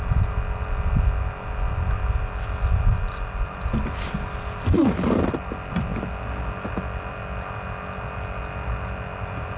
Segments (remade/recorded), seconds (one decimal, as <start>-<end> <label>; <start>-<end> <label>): 0.0-9.6 recorded